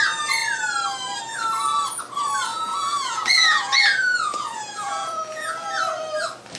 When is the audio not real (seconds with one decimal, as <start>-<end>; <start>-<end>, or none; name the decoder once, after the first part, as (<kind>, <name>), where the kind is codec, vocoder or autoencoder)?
2.5-5.8 (vocoder, Vocos)